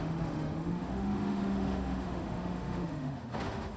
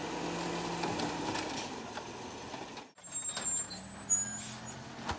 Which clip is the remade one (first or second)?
first